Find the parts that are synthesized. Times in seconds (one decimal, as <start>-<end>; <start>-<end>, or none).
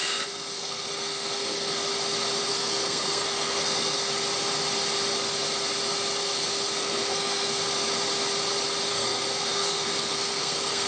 0.0-1.9; 2.4-4.1; 6.2-7.6; 8.9-10.9